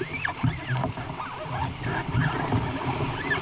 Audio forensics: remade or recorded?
recorded